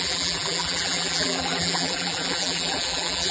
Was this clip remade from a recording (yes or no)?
yes